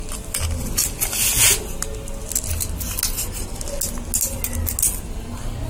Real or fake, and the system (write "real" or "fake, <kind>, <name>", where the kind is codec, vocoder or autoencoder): real